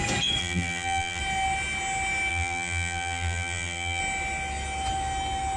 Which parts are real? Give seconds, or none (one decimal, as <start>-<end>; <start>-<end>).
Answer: 0.0-0.4; 1.2-2.3; 4.0-5.6